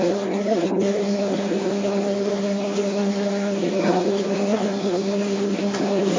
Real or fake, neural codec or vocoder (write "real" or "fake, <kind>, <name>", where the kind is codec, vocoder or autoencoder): fake, codec, SNAC